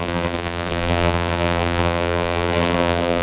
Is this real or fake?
fake